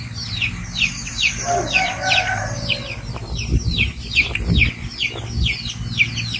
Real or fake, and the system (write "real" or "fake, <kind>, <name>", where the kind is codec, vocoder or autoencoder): real